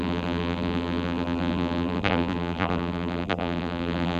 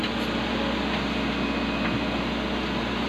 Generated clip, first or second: first